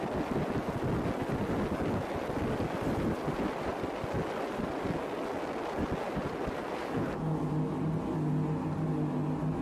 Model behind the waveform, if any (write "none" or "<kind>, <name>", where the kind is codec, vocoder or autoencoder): none